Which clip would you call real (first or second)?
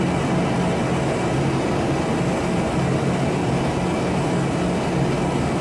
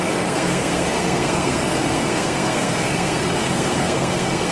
first